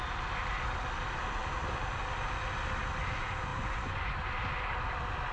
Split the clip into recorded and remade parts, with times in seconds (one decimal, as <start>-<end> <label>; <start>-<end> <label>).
0.0-3.5 recorded; 3.5-4.1 remade; 4.1-5.3 recorded